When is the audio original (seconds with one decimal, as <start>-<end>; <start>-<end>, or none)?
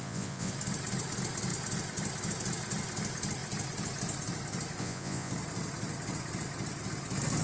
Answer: 0.5-4.8; 5.3-7.4